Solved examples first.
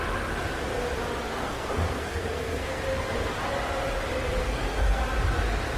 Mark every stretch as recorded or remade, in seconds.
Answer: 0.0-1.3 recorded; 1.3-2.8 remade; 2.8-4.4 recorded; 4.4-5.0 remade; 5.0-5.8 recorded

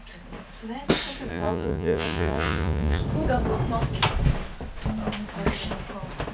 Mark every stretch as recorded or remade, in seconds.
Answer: 0.0-1.3 recorded; 1.3-3.0 remade; 3.0-6.3 recorded

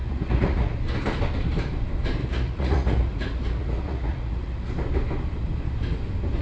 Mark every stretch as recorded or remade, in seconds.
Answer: 0.0-0.7 remade; 0.7-2.2 recorded; 2.2-4.7 remade; 4.7-6.4 recorded

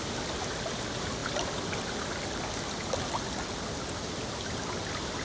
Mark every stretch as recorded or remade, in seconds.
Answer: 0.0-5.2 recorded

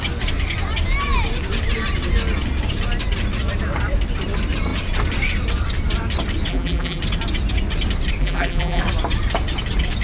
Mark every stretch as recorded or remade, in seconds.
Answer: 0.0-6.5 recorded; 6.5-7.0 remade; 7.0-8.2 recorded; 8.2-8.8 remade; 8.8-10.0 recorded

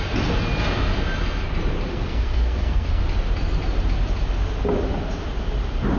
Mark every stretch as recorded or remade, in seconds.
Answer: 0.0-1.9 recorded; 1.9-3.0 remade; 3.0-6.0 recorded

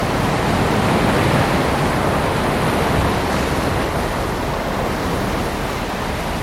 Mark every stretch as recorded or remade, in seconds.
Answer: 0.0-0.5 remade; 0.5-6.4 recorded

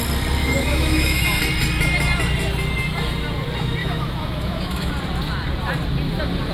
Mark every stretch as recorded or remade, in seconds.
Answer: 0.0-0.4 recorded; 0.4-1.4 remade; 1.4-3.8 recorded; 3.8-4.9 remade; 4.9-6.5 recorded